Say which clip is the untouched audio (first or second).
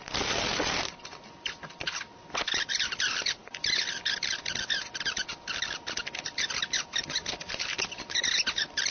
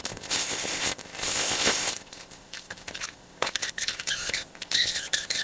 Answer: first